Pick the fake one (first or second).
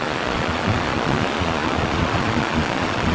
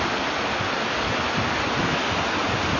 first